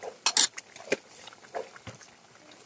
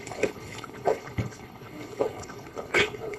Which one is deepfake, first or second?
second